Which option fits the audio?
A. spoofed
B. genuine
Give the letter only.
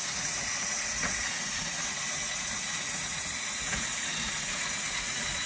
A